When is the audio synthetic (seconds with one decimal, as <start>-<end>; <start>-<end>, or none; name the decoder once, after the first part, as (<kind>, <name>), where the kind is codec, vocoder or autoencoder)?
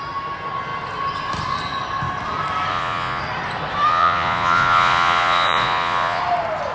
2.7-3.2 (vocoder, Vocos); 3.9-6.2